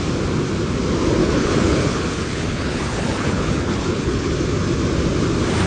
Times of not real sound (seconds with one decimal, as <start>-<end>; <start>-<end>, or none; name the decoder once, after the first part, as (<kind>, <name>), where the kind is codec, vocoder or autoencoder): 1.2-4.3 (codec, HILCodec)